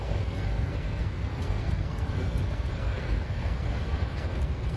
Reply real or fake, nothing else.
fake